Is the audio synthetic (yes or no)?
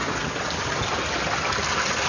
no